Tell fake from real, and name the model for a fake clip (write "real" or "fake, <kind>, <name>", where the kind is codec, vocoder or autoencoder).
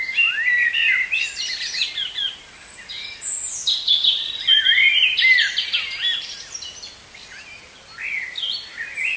real